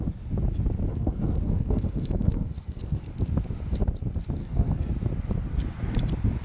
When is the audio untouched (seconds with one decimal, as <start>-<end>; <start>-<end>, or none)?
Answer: 0.0-0.9; 3.0-4.4; 4.9-6.4